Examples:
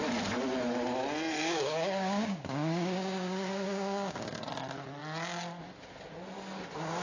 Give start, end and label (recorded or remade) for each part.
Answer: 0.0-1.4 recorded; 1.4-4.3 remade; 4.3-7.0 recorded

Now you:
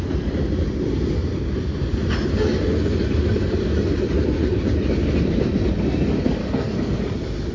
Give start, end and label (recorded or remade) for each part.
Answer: 0.0-6.4 recorded; 6.4-7.0 remade; 7.0-7.5 recorded

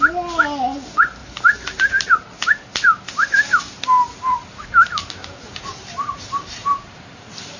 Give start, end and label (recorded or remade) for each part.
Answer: 0.0-1.2 recorded; 1.2-1.9 remade; 1.9-4.3 recorded; 4.3-7.6 remade

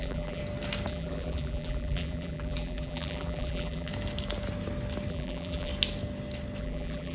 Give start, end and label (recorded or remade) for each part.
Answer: 0.0-0.4 remade; 0.4-0.9 recorded; 0.9-3.9 remade; 3.9-5.1 recorded; 5.1-5.7 remade; 5.7-6.6 recorded; 6.6-7.1 remade

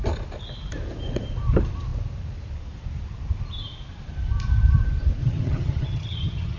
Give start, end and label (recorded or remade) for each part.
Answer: 0.0-5.2 recorded; 5.2-6.6 remade

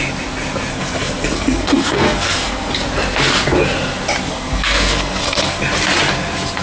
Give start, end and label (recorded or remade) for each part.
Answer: 0.0-0.7 recorded; 0.7-2.7 remade; 2.7-4.3 recorded; 4.3-5.6 remade; 5.6-6.6 recorded

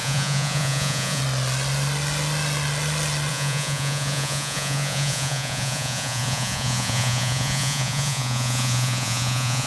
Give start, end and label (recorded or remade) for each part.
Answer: 0.0-1.2 remade; 1.2-3.3 recorded; 3.3-9.7 remade